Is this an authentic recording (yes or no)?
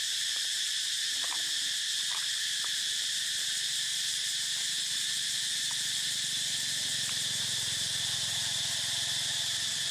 no